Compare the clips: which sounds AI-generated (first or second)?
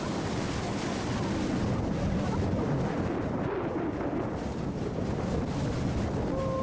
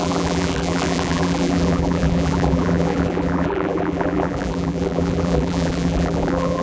second